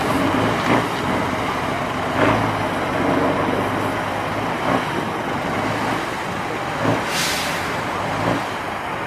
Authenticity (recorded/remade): recorded